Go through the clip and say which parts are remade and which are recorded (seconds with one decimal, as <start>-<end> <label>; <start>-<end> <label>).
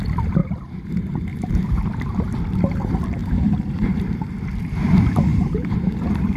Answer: 0.0-0.4 recorded; 0.4-0.9 remade; 0.9-1.3 recorded; 1.3-2.0 remade; 2.0-3.2 recorded; 3.2-4.3 remade; 4.3-5.3 recorded; 5.3-6.4 remade